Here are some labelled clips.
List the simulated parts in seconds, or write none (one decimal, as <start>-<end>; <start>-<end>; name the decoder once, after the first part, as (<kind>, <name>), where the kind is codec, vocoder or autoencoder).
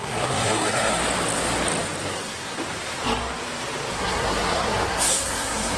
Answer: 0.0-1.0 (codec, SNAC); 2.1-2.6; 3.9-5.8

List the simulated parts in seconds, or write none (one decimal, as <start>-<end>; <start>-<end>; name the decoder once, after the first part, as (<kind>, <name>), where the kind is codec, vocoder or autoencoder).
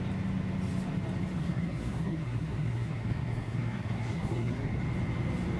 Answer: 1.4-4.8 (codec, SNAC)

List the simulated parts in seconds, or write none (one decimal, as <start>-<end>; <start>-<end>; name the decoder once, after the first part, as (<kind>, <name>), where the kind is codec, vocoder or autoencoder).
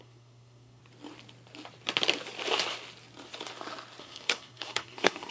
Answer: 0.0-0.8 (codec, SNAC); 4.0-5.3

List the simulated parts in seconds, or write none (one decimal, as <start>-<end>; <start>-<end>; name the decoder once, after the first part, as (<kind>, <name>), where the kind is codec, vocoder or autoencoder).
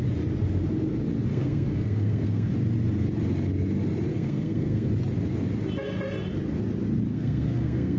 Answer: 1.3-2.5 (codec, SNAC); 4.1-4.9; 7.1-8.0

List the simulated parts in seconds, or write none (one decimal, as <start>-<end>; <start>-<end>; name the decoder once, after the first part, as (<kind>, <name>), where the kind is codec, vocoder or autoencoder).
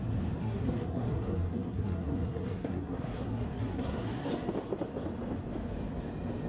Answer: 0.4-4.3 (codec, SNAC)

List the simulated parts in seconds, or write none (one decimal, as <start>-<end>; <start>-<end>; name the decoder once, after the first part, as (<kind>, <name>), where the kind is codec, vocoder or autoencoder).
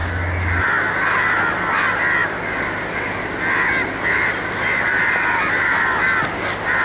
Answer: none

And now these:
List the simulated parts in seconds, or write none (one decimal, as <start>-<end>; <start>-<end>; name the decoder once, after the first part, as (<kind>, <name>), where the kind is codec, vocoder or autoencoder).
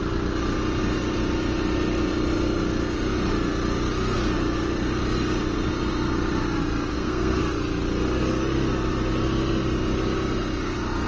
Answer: 6.9-7.4 (codec, SNAC)